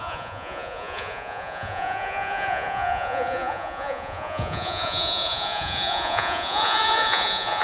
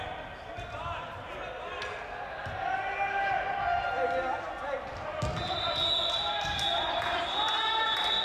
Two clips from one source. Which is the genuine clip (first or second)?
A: second